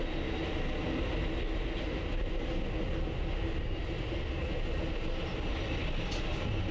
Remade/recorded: recorded